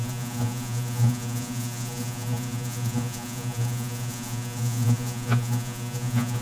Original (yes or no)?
no